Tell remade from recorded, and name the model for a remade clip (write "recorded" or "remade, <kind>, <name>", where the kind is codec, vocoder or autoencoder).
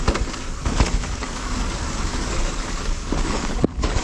remade, codec, DAC